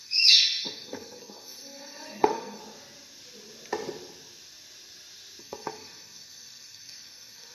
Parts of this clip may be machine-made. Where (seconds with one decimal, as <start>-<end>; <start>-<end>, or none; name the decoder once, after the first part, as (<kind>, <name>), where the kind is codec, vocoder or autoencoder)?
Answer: 0.0-2.6 (codec, SNAC); 5.4-7.5